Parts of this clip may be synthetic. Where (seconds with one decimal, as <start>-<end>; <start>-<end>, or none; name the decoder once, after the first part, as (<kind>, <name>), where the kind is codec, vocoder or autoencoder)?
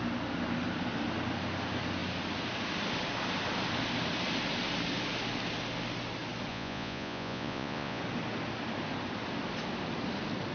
6.5-8.0 (vocoder, Vocos)